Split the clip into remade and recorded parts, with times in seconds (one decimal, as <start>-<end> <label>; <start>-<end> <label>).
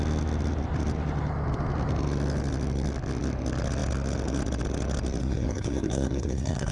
0.0-5.2 recorded; 5.2-6.7 remade